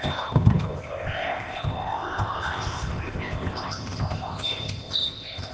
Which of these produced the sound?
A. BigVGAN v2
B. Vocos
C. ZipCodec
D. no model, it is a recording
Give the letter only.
C